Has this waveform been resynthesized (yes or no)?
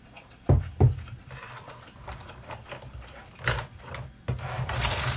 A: no